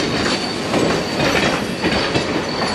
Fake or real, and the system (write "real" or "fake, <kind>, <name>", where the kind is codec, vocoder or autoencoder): real